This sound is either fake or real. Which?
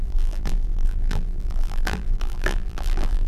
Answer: fake